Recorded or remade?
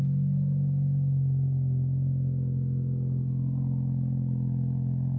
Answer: recorded